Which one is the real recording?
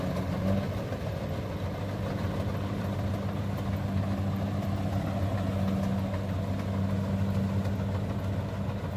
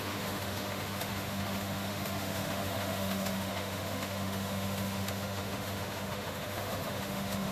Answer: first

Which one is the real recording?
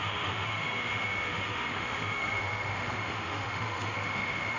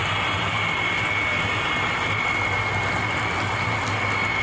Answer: second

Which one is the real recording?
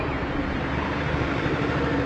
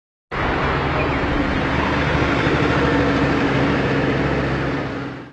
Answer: second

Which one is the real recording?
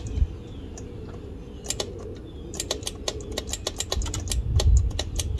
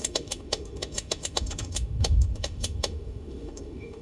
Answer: first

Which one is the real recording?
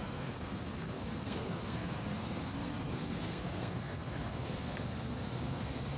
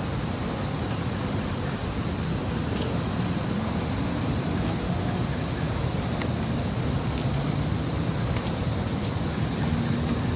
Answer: second